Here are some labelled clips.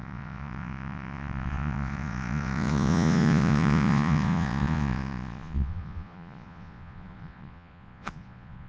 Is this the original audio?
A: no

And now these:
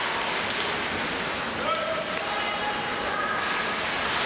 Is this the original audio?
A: yes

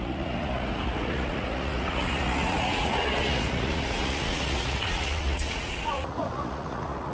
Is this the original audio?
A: no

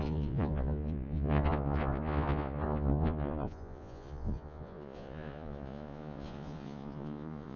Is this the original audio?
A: no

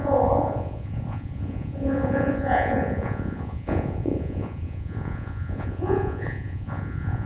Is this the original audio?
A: no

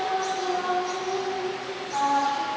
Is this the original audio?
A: yes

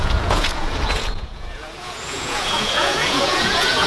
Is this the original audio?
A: no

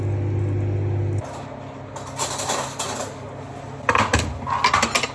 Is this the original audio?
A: yes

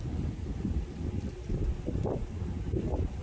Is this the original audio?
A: yes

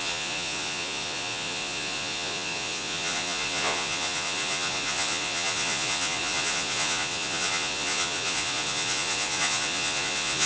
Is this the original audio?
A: no